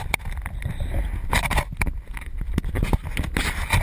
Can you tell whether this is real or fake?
real